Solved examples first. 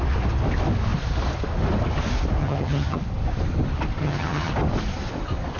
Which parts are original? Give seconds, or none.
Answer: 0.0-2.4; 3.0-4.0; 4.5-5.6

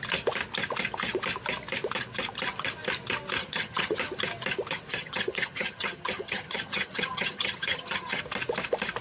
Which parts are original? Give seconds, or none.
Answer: 0.0-3.4; 4.0-4.9; 8.2-9.0

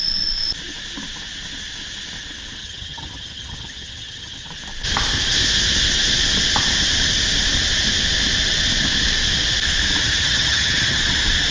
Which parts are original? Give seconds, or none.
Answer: 0.0-2.6; 4.5-10.0; 11.0-11.5

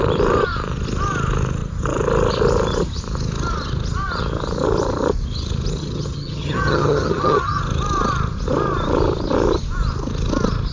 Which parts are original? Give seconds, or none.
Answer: 0.0-5.8; 7.6-10.7

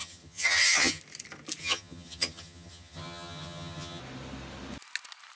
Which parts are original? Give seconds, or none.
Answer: 1.0-1.6; 4.0-5.4

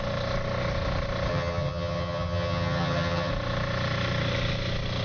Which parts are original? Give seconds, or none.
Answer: 0.0-1.3; 3.3-5.0

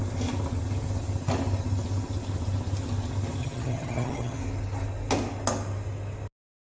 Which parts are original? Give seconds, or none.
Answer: 0.0-3.4; 4.4-6.7